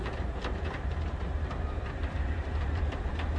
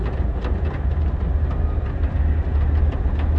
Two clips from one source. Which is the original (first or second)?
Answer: second